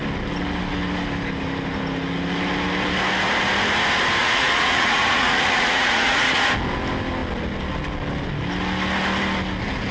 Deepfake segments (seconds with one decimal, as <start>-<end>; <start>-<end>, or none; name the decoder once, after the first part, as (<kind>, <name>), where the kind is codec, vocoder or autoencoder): 4.2-6.5 (vocoder, Vocos)